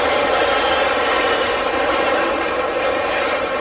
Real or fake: fake